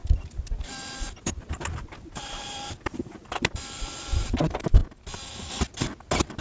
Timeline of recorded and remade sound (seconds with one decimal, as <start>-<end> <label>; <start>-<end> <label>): 0.0-3.8 remade; 3.8-6.4 recorded